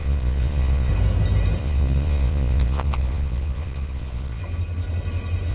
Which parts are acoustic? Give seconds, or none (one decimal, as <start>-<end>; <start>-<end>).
0.9-1.6; 4.4-5.5